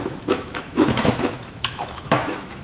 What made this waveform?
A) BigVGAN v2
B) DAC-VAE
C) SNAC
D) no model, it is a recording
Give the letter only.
B